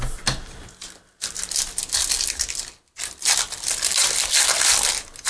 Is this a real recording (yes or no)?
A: yes